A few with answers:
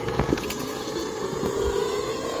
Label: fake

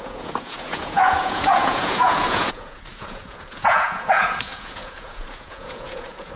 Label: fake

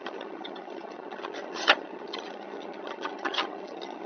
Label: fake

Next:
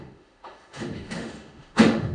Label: fake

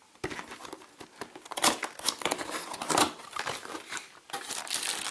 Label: real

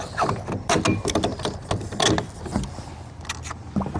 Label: real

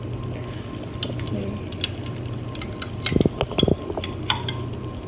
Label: real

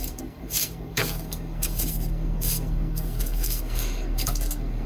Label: fake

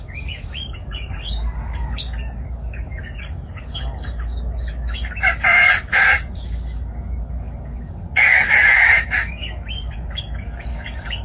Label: fake